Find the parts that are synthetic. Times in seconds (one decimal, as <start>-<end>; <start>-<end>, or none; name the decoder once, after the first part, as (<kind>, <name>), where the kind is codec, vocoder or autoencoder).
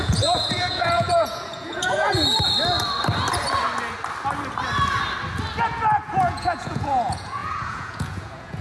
0.0-2.1 (vocoder, Vocos); 6.2-8.6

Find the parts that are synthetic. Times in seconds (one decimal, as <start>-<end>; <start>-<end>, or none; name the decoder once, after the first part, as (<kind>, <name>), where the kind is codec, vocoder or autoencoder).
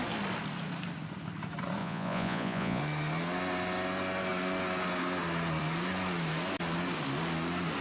1.8-2.8 (vocoder, Vocos)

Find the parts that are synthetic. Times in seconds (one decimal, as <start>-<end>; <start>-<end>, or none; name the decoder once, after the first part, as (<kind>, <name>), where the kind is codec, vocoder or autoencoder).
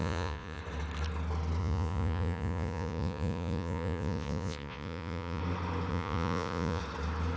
0.0-0.6 (vocoder, Vocos); 1.6-5.4; 5.9-6.8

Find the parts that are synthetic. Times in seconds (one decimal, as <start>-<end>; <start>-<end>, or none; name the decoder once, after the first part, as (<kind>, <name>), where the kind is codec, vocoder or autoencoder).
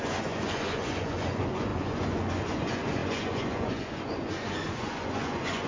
0.0-5.7 (vocoder, Vocos)